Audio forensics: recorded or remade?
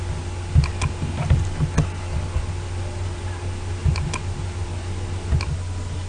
recorded